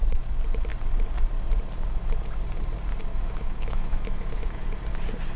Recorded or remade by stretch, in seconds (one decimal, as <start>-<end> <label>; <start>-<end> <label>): 0.0-3.1 recorded; 3.1-4.6 remade; 4.6-5.4 recorded